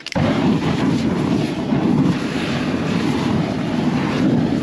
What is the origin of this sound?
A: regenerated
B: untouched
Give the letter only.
A